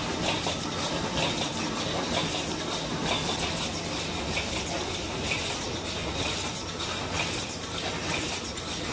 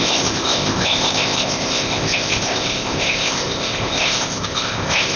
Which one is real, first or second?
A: first